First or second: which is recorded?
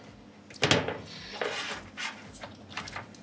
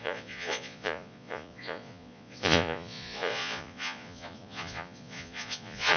first